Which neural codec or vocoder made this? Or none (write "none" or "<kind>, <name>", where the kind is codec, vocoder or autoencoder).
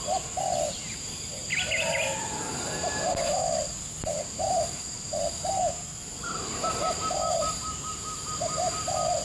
none